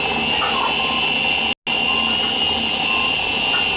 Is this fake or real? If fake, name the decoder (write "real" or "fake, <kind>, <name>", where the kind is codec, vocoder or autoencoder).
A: real